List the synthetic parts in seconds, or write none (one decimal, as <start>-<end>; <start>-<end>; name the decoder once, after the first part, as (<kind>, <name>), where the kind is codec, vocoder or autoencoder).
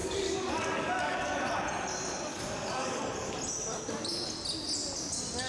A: 0.0-1.5 (codec, DAC); 2.3-3.3